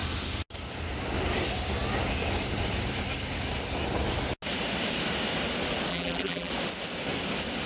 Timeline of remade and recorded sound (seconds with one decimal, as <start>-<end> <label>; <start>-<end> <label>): 0.0-5.9 recorded; 5.9-6.5 remade; 6.5-7.7 recorded